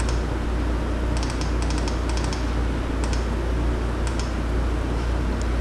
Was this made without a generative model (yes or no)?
yes